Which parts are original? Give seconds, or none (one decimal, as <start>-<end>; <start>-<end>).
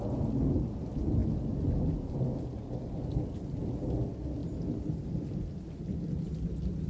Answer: 0.0-6.9